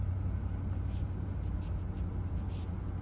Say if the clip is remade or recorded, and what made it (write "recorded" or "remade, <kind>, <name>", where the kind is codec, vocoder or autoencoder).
recorded